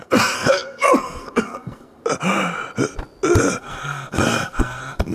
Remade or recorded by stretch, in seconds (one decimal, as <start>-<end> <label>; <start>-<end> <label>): 0.0-2.0 remade; 2.0-3.6 recorded; 3.6-5.1 remade